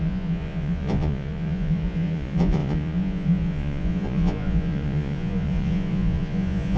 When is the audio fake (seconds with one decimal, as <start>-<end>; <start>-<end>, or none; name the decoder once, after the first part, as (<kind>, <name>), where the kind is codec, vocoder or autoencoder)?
0.0-6.8 (vocoder, Vocos)